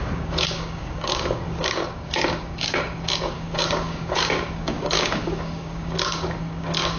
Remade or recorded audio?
remade